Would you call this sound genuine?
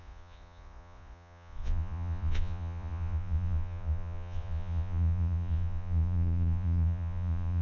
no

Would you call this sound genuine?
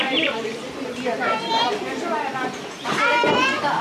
no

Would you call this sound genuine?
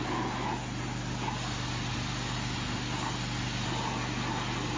yes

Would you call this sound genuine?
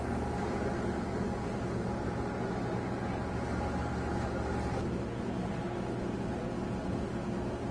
yes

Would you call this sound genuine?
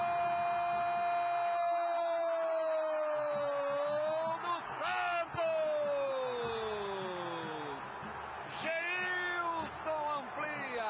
yes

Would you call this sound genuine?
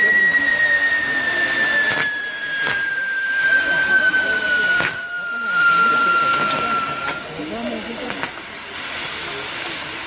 yes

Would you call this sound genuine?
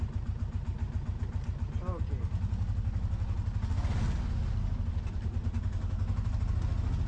yes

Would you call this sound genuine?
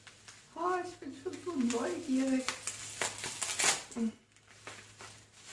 yes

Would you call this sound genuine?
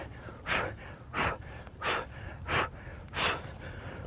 yes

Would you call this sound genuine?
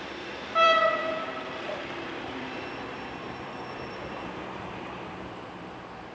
no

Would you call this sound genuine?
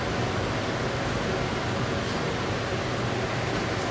yes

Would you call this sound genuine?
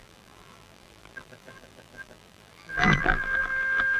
no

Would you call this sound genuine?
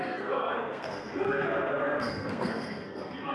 no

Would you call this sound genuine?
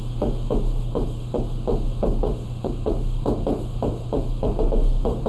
no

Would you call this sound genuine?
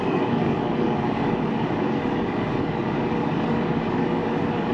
no